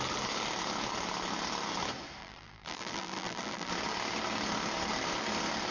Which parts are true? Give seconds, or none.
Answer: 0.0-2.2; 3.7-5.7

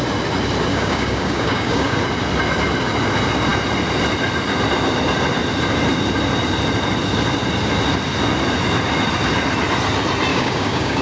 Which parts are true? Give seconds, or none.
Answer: 0.0-0.7; 2.0-10.3

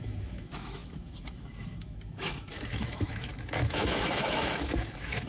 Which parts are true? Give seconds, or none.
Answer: none

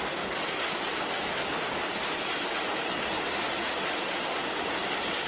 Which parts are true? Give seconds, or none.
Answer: 0.0-5.3

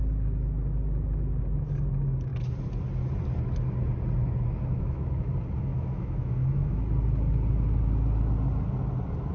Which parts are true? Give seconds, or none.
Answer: 0.0-4.7; 5.3-5.7; 6.8-9.3

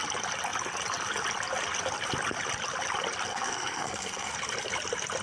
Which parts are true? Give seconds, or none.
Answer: 0.0-3.3; 4.3-5.2